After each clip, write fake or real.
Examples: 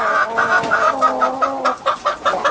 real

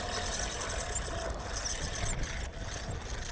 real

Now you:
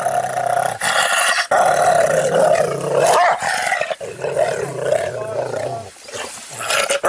real